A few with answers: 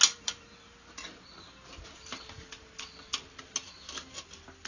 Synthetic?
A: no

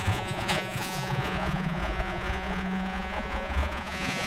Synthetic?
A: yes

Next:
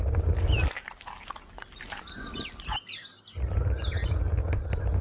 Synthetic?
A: no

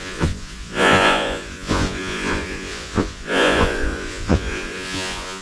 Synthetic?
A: yes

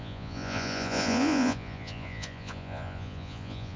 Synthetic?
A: yes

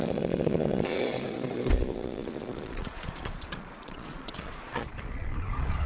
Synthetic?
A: yes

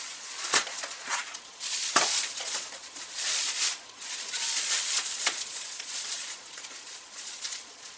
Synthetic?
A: yes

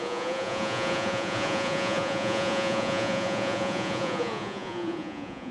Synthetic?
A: yes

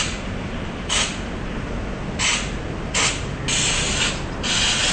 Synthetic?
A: no